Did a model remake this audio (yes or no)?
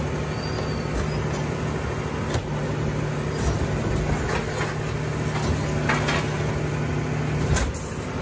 no